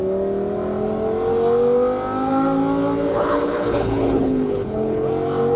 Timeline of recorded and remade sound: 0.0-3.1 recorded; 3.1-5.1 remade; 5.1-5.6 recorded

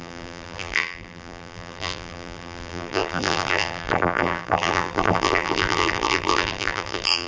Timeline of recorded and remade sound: 0.0-7.3 remade

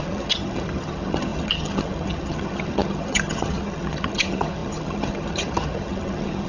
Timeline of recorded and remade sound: 0.0-6.5 remade

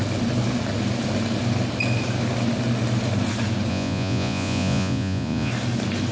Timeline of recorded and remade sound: 0.0-3.7 recorded; 3.7-5.5 remade; 5.5-6.1 recorded

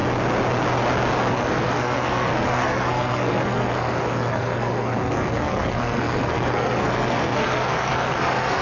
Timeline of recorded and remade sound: 0.0-1.3 recorded; 1.3-8.6 remade